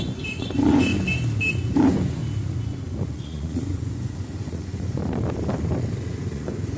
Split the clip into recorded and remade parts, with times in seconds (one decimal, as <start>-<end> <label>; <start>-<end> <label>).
0.0-0.9 remade; 0.9-1.8 recorded; 1.8-2.2 remade; 2.2-3.0 recorded; 3.0-5.0 remade; 5.0-6.1 recorded; 6.1-6.8 remade